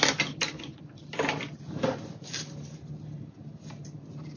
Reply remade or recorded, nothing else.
remade